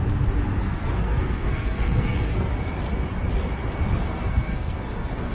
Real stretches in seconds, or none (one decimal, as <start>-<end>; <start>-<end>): 0.0-0.6; 2.5-4.0